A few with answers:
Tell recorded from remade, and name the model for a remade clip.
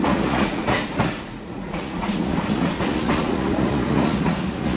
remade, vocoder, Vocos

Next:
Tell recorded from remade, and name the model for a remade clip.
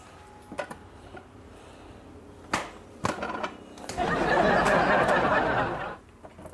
recorded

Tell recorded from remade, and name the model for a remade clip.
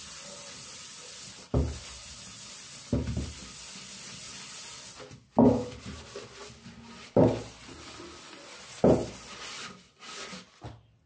recorded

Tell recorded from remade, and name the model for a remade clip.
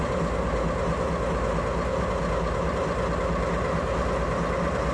recorded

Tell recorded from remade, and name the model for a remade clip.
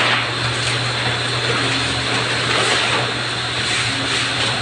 recorded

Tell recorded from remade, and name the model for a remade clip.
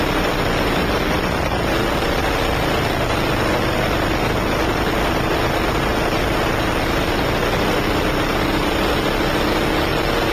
recorded